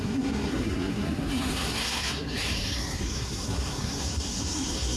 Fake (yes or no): yes